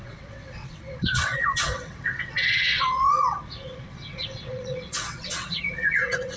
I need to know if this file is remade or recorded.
remade